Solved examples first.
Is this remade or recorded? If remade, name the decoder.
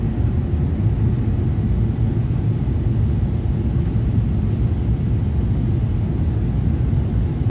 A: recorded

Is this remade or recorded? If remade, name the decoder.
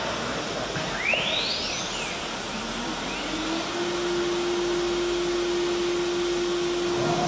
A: recorded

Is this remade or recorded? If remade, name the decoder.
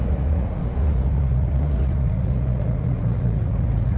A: remade, vocoder, Vocos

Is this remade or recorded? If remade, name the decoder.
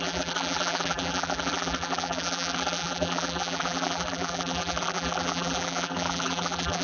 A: remade, vocoder, BigVGAN v2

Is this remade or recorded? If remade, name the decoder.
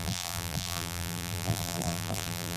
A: remade, vocoder, BigVGAN v2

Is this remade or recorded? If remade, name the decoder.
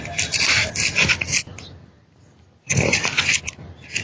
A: recorded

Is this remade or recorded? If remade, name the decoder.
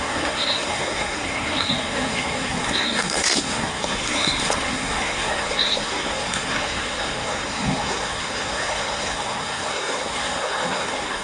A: remade, codec, SNAC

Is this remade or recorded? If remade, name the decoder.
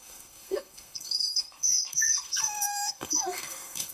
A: remade, codec, SNAC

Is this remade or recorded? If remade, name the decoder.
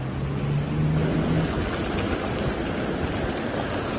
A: recorded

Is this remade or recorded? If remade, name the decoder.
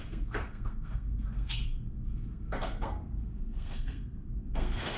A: remade, codec, SNAC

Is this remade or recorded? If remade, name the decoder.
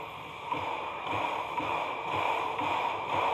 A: remade, vocoder, BigVGAN v2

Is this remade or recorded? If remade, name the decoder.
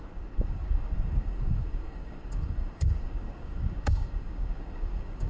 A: remade, codec, DAC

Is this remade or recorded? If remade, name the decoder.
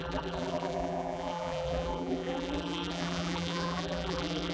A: remade, vocoder, BigVGAN v2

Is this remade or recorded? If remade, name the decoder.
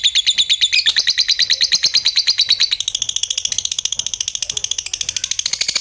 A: recorded